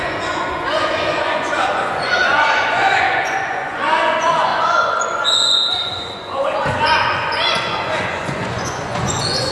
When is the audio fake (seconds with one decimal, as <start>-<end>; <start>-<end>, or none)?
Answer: 0.0-9.5